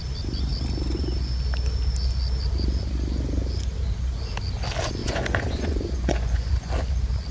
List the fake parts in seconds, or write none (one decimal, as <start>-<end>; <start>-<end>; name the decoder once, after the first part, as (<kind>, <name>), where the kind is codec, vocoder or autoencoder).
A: 5.0-6.7 (vocoder, Vocos)